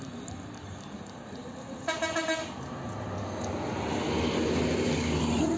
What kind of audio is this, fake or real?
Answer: real